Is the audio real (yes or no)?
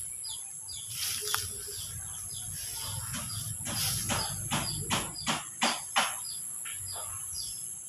yes